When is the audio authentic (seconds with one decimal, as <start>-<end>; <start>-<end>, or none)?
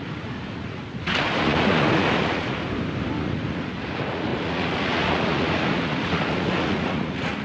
2.6-3.2